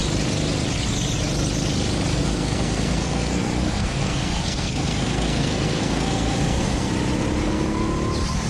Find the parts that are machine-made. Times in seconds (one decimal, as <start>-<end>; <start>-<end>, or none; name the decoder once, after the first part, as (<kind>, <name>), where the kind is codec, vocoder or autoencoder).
2.1-6.9 (codec, SNAC); 7.4-7.9